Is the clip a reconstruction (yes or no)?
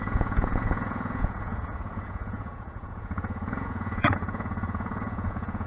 yes